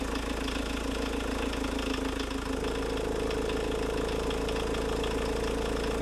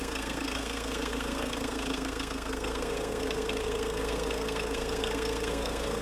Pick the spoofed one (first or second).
second